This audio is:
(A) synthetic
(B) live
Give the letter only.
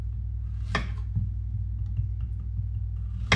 B